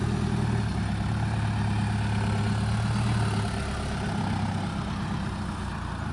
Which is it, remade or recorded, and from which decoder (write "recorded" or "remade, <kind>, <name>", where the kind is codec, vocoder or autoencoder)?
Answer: recorded